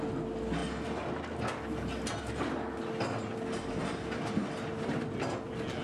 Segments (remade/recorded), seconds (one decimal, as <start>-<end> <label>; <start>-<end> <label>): 0.0-5.8 recorded